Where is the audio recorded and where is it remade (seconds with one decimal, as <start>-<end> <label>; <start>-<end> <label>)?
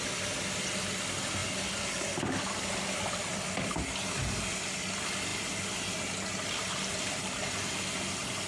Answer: 0.0-8.5 recorded